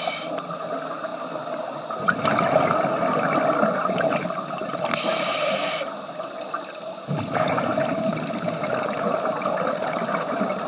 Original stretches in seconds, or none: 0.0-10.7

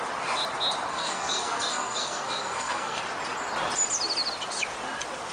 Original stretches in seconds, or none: 0.0-0.9; 3.0-5.3

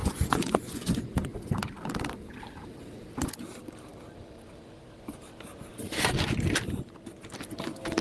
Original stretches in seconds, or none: 1.5-8.0